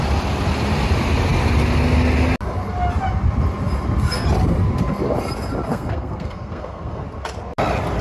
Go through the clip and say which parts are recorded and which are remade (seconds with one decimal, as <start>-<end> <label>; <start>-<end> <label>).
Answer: 0.0-5.7 recorded; 5.7-7.0 remade; 7.0-8.0 recorded